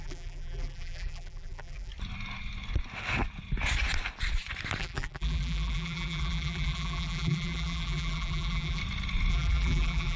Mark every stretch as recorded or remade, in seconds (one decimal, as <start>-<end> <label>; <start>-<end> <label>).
0.0-1.9 remade; 1.9-4.8 recorded; 4.8-8.8 remade; 8.8-9.3 recorded; 9.3-10.2 remade